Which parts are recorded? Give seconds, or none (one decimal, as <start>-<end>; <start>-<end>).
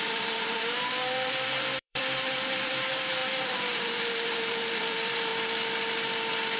5.3-6.6